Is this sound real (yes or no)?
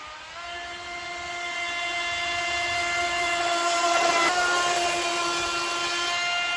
yes